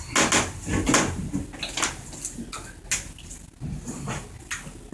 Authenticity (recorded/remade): recorded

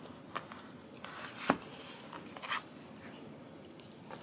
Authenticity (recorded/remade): recorded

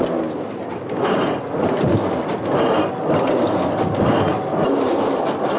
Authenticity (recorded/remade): recorded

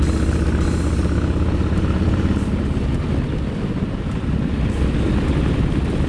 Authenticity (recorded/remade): recorded